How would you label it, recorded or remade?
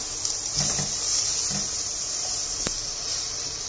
recorded